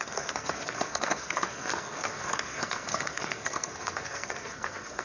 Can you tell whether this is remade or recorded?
remade